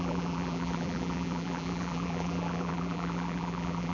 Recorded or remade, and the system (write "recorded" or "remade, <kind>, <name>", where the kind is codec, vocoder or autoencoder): remade, vocoder, BigVGAN v2